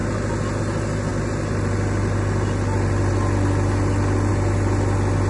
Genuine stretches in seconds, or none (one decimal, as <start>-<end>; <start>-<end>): 0.0-5.3